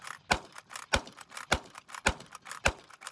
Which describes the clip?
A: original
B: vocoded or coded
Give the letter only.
A